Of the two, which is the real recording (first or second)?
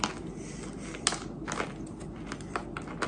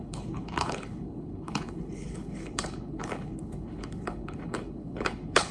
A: first